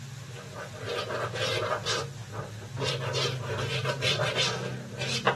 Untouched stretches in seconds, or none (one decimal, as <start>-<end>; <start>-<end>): 0.0-3.7